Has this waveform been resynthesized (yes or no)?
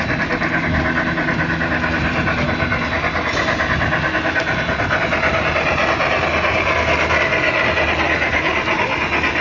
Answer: no